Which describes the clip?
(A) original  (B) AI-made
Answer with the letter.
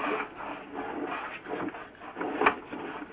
A